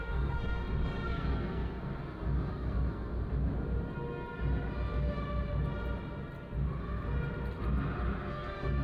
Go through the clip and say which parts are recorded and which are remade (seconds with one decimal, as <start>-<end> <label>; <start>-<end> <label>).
0.0-0.6 remade; 0.6-1.1 recorded; 1.1-2.0 remade; 2.0-2.5 recorded; 2.5-3.1 remade; 3.1-8.3 recorded; 8.3-8.8 remade